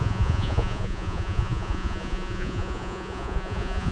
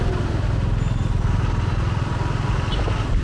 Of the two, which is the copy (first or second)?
first